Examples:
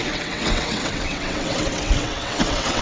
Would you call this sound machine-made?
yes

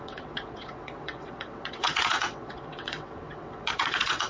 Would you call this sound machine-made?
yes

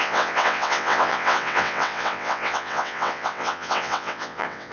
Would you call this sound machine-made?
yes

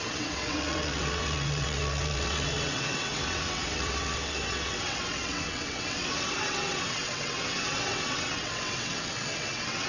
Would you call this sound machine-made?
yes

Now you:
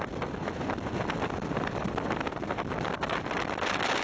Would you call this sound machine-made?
no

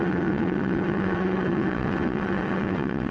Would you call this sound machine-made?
yes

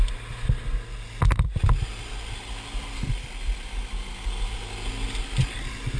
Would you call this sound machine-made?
no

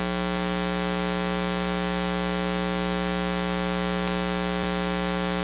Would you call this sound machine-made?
no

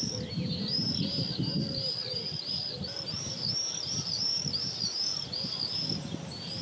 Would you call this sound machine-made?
no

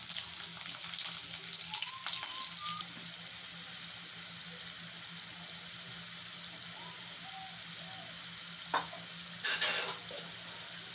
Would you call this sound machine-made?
no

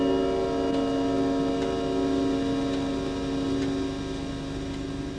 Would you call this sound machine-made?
no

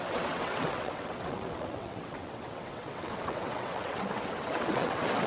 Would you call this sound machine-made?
yes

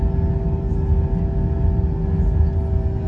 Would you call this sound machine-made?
no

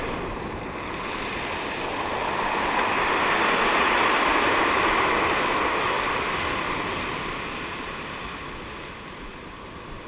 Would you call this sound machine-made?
no